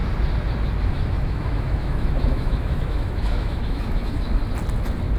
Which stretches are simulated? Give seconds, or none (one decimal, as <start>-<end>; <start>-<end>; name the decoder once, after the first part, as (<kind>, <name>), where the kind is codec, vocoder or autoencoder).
0.8-4.4 (autoencoder, DAC-VAE)